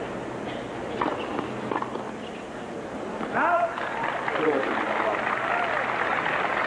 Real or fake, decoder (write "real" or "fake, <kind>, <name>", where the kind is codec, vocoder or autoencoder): real